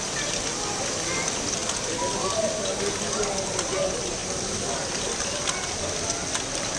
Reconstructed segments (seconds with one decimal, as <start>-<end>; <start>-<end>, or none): none